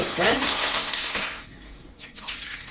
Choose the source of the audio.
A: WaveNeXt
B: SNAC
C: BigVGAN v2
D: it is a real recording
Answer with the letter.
B